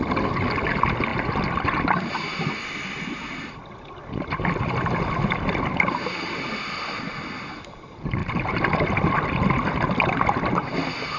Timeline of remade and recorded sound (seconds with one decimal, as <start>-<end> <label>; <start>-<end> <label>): 0.0-11.2 recorded